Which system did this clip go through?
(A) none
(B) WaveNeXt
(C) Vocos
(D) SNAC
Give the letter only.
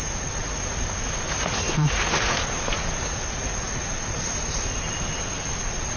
C